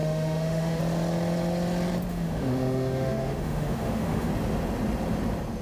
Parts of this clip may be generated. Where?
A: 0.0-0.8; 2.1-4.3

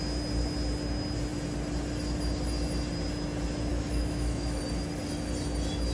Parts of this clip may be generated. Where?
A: 3.7-4.6

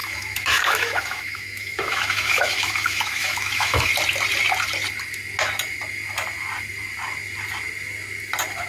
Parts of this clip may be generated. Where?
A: 0.0-3.9